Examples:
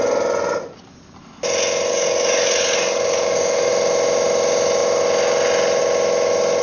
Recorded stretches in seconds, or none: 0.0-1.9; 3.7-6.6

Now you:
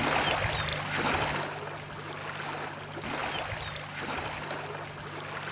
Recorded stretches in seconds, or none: 0.0-5.5

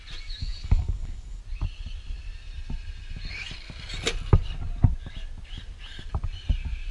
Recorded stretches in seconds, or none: 0.0-0.4; 1.4-6.9

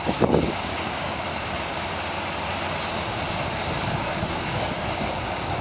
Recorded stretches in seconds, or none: 1.3-3.8

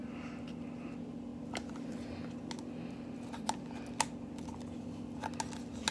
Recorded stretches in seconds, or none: 0.0-5.9